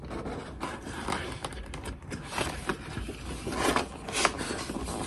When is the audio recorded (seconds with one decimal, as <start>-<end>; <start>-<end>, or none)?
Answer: 0.0-5.1